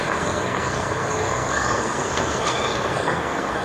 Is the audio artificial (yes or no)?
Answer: yes